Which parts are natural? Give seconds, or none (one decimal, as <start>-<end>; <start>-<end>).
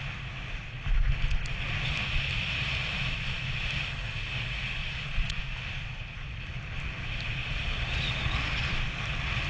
0.0-4.8; 5.4-7.4; 8.0-9.5